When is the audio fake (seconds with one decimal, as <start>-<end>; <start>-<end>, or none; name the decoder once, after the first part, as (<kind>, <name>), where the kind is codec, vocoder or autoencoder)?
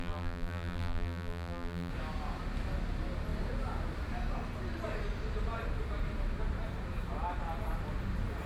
0.0-1.9 (vocoder, BigVGAN v2)